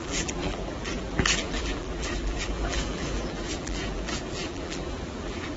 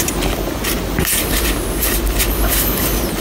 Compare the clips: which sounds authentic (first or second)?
second